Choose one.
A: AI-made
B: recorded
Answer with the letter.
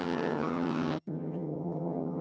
A